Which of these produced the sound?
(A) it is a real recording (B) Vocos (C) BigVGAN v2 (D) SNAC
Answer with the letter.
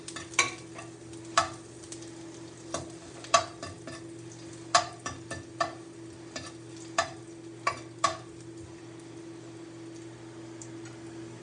A